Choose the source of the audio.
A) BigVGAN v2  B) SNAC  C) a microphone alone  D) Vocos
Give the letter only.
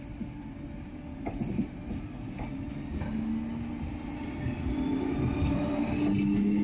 C